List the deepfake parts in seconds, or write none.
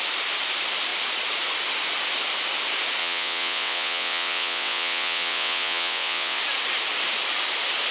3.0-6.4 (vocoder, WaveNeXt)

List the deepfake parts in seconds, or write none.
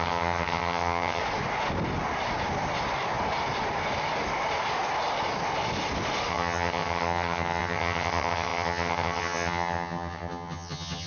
0.0-1.2 (vocoder, HiFi-GAN); 6.3-11.1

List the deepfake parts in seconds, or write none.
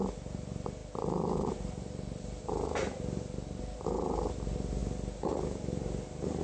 none